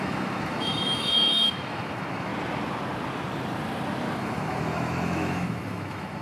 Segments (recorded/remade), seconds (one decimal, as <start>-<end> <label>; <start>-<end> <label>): 0.0-2.3 remade; 2.3-4.2 recorded; 4.2-6.2 remade

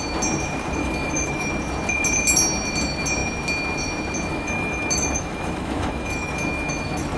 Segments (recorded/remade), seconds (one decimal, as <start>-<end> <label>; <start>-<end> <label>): 0.0-0.8 recorded; 0.8-1.5 remade; 1.5-4.3 recorded; 4.3-7.2 remade